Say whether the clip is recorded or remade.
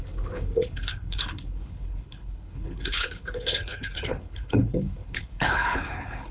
remade